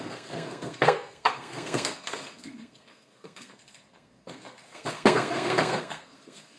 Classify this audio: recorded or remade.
remade